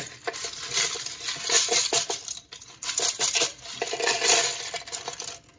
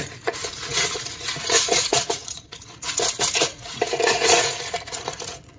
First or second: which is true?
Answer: first